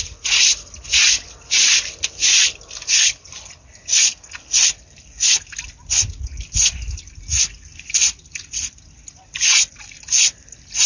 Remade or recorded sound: recorded